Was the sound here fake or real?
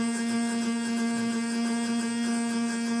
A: real